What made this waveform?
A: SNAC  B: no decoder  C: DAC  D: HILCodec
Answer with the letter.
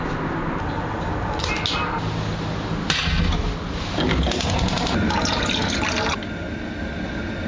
B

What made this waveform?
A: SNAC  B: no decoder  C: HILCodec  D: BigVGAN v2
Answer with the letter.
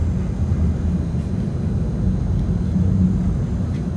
B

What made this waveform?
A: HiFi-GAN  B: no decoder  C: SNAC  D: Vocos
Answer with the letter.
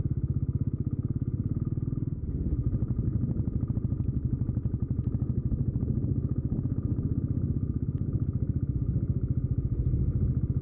B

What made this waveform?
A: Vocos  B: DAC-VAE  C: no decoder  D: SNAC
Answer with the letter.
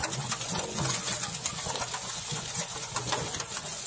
A